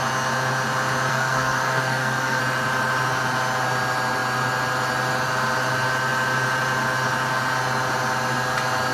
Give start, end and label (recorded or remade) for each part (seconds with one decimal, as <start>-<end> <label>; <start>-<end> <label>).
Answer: 0.0-1.1 recorded; 1.1-2.4 remade; 2.4-8.9 recorded